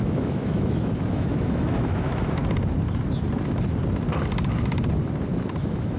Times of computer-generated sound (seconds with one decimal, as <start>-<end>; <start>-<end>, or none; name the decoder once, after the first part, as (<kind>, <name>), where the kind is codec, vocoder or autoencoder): 0.0-2.4 (autoencoder, DAC-VAE); 5.6-6.0